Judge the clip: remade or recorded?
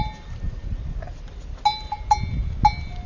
recorded